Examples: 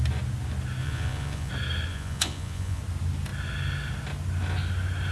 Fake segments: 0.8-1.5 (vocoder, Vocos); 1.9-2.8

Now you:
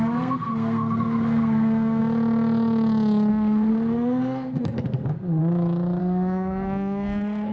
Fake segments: 0.0-2.0 (codec, SNAC); 3.3-5.4; 6.0-7.5

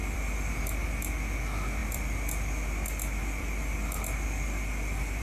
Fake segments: 0.0-0.6 (vocoder, BigVGAN v2); 1.8-5.2

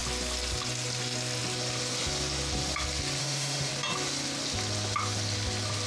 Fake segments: 3.2-3.7 (autoencoder, DAC-VAE)